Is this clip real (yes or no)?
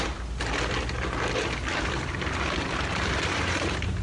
no